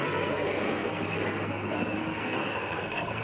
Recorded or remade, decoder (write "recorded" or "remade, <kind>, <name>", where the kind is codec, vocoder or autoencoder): remade, codec, SNAC